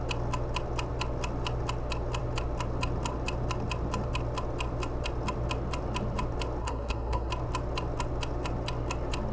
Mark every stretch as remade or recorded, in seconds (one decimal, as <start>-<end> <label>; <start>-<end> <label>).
0.0-6.6 recorded; 6.6-7.3 remade; 7.3-9.3 recorded